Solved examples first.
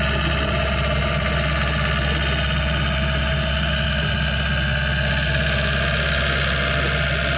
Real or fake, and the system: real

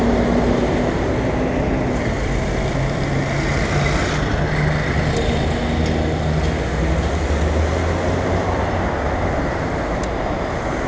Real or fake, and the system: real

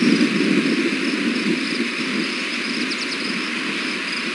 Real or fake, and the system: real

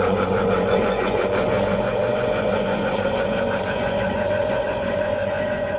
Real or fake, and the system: fake, vocoder, Vocos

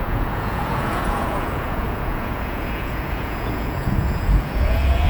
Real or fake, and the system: fake, vocoder, Vocos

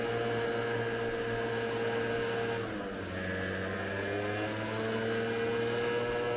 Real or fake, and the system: real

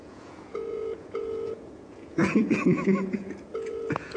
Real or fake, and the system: fake, vocoder, Vocos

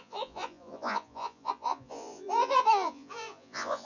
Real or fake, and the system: fake, vocoder, Vocos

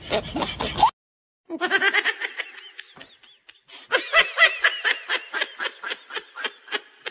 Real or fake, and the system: real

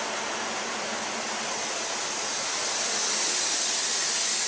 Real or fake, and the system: real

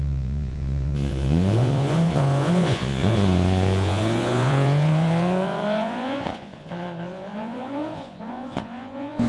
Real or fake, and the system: fake, vocoder, Vocos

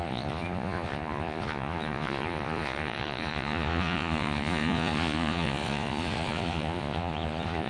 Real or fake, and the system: fake, vocoder, Vocos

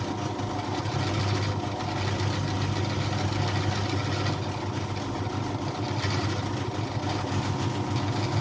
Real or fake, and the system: real